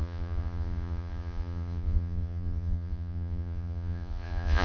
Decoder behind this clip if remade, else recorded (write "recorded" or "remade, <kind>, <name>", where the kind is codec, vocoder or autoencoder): remade, vocoder, Vocos